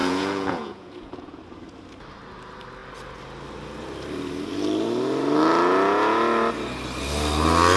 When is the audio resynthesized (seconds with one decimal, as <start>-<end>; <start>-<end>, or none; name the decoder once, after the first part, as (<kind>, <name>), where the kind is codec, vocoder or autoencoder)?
0.0-1.4 (vocoder, Vocos)